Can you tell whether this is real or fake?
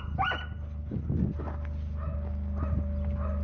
real